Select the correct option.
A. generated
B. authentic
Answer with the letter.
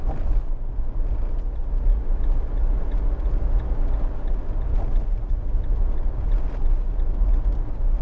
B